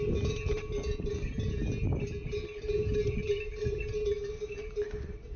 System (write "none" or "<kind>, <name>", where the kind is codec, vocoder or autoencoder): none